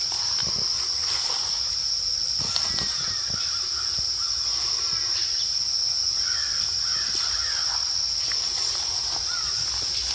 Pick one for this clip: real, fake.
real